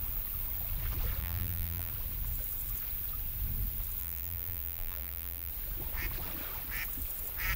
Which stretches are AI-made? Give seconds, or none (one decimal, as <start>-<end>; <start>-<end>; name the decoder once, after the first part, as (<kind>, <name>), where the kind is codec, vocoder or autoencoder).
1.2-1.9 (vocoder, BigVGAN v2); 4.0-5.5